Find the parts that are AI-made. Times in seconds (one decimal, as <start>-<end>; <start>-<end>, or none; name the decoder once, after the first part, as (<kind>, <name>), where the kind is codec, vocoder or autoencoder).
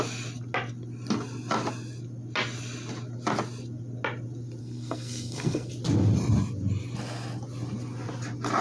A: 4.6-5.7 (codec, SNAC)